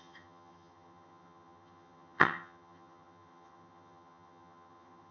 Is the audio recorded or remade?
remade